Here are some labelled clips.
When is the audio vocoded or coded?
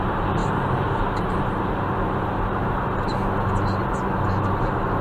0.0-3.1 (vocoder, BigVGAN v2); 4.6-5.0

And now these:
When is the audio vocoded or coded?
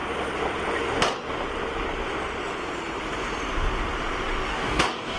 4.5-5.2 (codec, DAC)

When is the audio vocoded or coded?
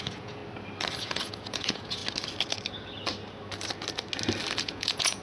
0.0-0.4 (vocoder, Vocos); 1.0-2.0; 4.6-5.2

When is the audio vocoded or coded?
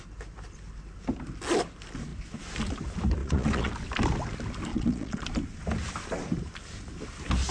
3.2-3.7 (vocoder, Vocos); 4.7-5.2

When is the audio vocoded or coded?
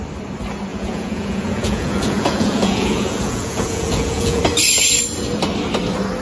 0.7-4.4 (vocoder, Vocos)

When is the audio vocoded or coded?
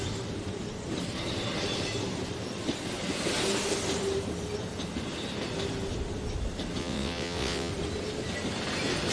6.8-7.7 (vocoder, WaveNeXt)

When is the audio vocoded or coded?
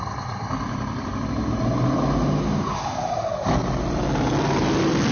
0.0-1.1 (vocoder, BigVGAN v2); 4.2-5.1